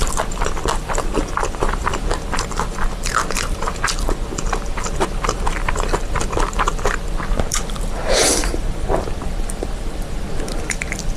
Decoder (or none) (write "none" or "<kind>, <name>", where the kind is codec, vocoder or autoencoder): vocoder, BigVGAN v2